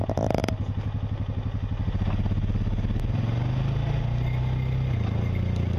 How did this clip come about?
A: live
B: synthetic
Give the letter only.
A